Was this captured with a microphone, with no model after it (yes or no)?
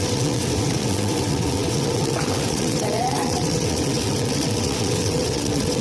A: no